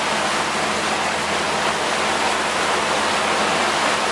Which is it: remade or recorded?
recorded